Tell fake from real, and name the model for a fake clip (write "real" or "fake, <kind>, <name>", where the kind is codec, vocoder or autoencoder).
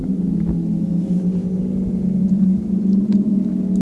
real